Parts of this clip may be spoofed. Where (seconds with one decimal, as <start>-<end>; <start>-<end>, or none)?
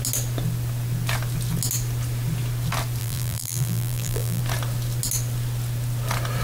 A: 3.0-4.4